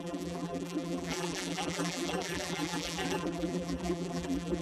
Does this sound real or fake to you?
fake